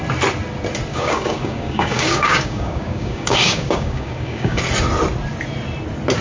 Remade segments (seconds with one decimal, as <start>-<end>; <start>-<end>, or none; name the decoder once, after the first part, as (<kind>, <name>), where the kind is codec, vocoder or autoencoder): 0.9-4.6 (codec, DAC)